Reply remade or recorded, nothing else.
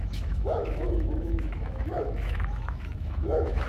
remade